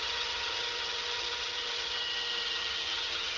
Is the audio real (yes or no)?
no